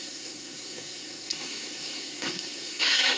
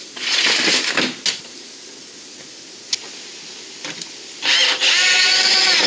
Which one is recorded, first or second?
second